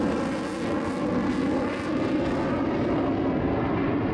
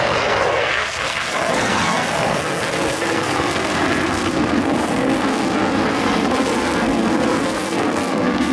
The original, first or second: first